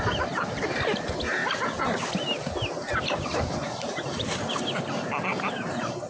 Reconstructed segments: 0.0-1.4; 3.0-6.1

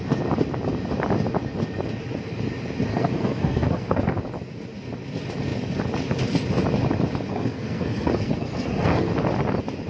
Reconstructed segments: 2.9-4.0; 7.3-9.1

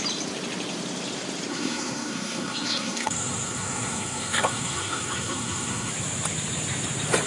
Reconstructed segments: 1.5-5.9

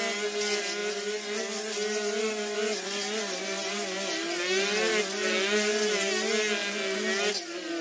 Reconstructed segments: none

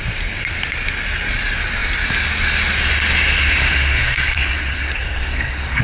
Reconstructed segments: 3.4-5.8